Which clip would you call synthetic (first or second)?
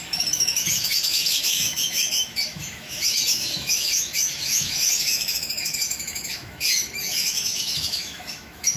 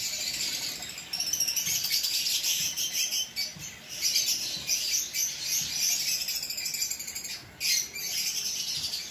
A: first